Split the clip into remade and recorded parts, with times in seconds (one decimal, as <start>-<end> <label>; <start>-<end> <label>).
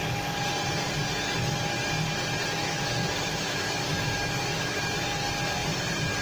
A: 0.0-2.6 recorded; 2.6-4.9 remade; 4.9-6.2 recorded